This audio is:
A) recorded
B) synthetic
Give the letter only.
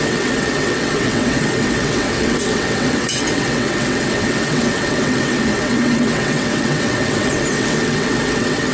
B